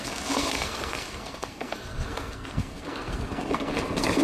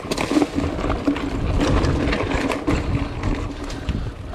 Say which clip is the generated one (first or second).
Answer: first